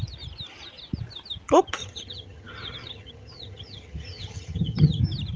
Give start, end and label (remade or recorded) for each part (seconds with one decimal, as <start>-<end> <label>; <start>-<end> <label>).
0.0-1.8 recorded; 1.8-5.0 remade; 5.0-5.4 recorded